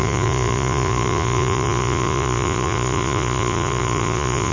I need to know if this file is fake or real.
fake